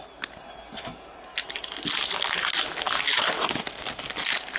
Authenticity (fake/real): real